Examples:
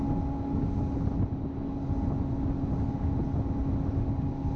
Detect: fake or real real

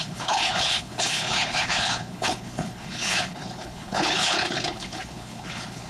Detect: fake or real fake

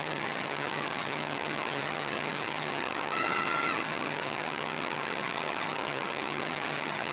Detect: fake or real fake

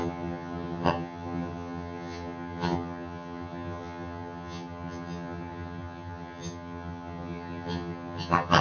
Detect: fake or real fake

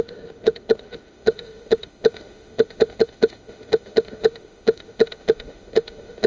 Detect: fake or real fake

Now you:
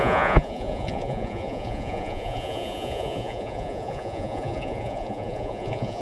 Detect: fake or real fake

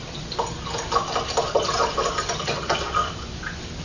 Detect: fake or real real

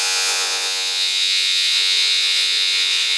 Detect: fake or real fake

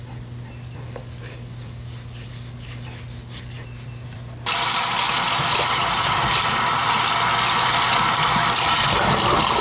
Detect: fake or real real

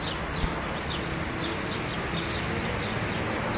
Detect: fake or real real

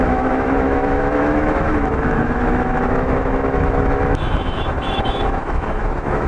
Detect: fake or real fake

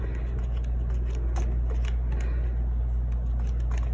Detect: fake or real real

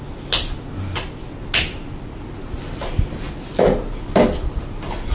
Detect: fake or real real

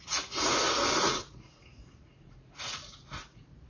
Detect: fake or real fake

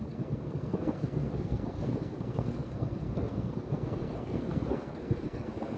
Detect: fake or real fake